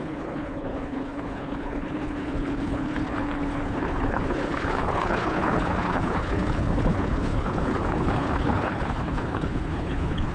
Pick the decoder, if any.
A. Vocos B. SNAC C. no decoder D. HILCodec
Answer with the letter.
D